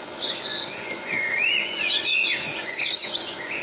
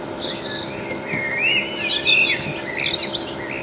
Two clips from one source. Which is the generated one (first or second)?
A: first